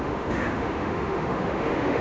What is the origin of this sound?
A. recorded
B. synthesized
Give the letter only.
B